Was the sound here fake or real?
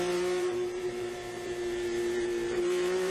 fake